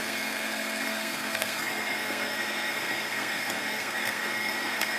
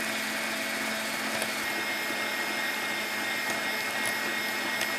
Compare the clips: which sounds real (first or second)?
second